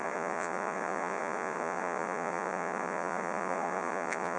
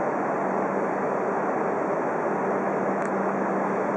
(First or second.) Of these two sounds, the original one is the second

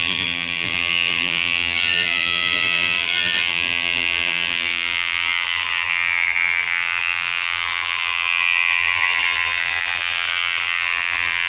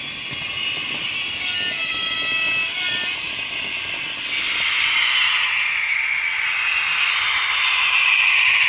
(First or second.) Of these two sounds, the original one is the second